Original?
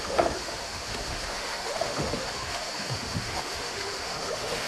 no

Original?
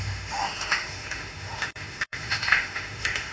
no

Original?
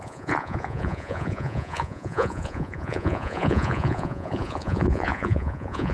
no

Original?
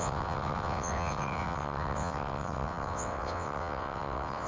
no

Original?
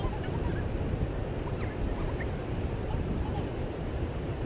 yes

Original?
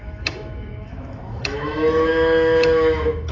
no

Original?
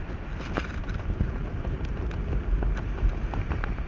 yes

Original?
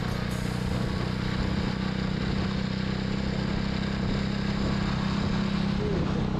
yes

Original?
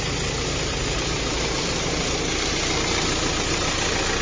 yes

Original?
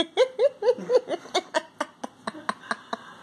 yes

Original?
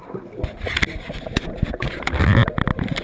yes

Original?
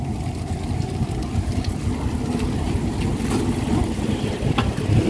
yes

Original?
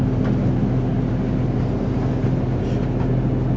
yes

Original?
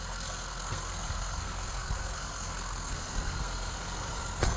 no